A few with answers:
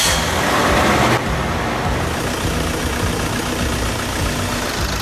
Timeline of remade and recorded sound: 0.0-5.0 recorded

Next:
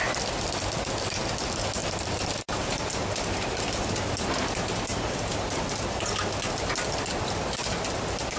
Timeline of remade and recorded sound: 0.0-1.8 recorded; 1.8-3.9 remade; 3.9-4.9 recorded; 4.9-6.2 remade; 6.2-8.4 recorded

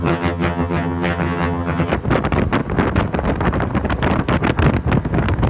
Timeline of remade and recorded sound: 0.0-1.9 remade; 1.9-5.5 recorded

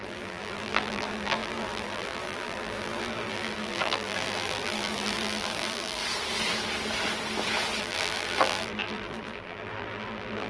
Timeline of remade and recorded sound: 0.0-6.0 remade; 6.0-7.8 recorded; 7.8-10.5 remade

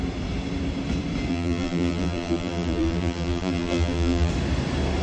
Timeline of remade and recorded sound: 0.0-1.3 recorded; 1.3-4.3 remade; 4.3-5.0 recorded

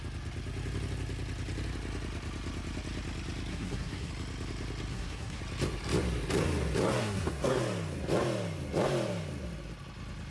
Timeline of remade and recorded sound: 0.0-3.5 recorded; 3.5-4.1 remade; 4.1-4.9 recorded; 4.9-5.4 remade; 5.4-7.0 recorded; 7.0-7.6 remade; 7.6-10.3 recorded

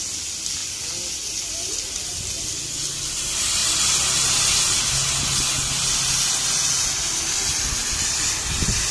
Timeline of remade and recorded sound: 0.0-8.9 recorded

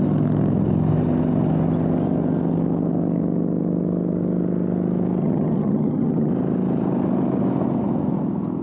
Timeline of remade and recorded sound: 0.0-5.2 recorded; 5.2-6.3 remade; 6.3-8.6 recorded